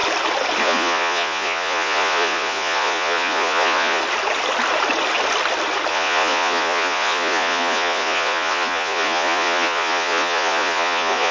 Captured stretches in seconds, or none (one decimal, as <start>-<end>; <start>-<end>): 0.0-0.6; 4.0-5.9